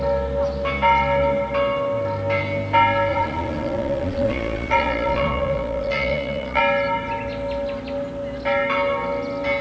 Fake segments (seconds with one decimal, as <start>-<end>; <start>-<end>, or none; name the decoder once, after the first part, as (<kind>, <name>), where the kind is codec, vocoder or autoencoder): 3.1-6.6 (vocoder, Vocos)